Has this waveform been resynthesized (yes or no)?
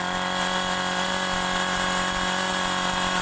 no